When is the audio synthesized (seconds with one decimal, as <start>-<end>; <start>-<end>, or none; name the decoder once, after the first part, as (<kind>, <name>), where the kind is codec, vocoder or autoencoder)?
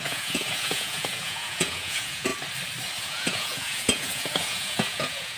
0.0-2.3 (vocoder, Vocos); 3.0-5.4